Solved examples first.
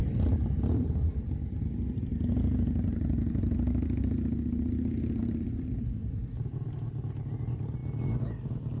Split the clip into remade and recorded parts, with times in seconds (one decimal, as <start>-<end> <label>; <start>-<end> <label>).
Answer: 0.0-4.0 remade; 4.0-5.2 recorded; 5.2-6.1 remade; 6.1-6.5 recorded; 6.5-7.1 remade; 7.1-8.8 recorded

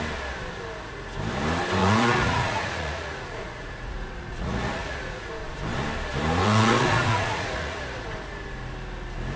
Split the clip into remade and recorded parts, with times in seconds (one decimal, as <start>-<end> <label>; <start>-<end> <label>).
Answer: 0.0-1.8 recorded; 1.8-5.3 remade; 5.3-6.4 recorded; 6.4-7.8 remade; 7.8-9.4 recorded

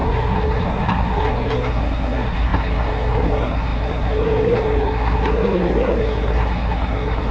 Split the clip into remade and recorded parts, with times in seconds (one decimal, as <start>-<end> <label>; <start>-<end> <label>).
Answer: 0.0-7.3 remade

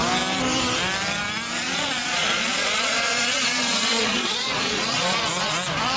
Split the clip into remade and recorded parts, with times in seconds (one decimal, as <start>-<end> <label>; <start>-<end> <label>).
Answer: 0.0-1.6 recorded; 1.6-5.2 remade; 5.2-6.0 recorded

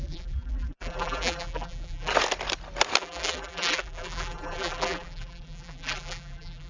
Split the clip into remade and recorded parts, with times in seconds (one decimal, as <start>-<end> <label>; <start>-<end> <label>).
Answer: 0.0-2.1 remade; 2.1-3.0 recorded; 3.0-6.7 remade

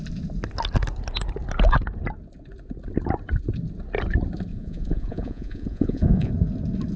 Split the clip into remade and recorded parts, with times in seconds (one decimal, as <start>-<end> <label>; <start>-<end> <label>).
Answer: 0.0-4.5 recorded; 4.5-6.3 remade; 6.3-7.0 recorded